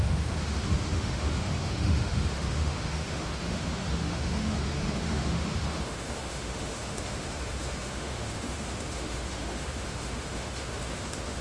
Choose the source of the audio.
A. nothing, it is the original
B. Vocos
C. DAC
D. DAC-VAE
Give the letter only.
D